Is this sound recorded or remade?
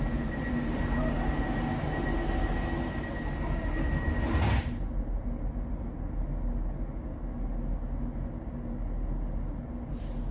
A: recorded